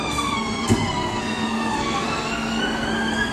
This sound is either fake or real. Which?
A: fake